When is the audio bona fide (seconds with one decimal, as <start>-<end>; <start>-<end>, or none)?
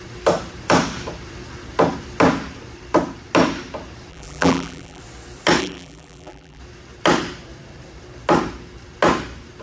0.0-4.1; 5.0-5.6; 6.6-9.6